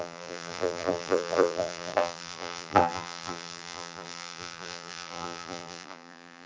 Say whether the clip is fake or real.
fake